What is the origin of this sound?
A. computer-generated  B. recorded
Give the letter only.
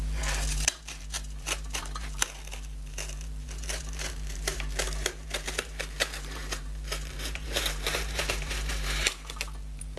A